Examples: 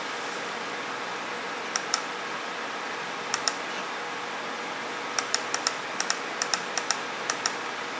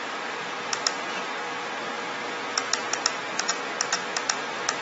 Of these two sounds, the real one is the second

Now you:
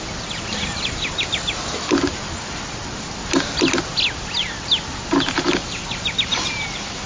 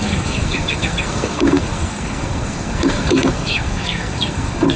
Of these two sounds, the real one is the first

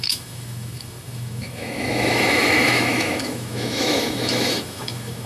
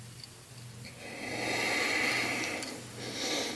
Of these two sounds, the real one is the second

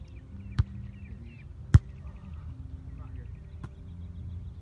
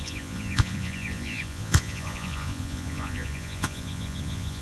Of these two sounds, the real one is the first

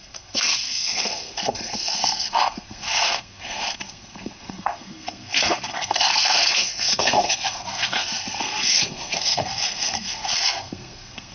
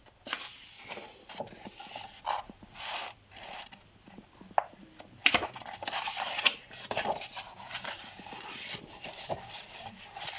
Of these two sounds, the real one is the second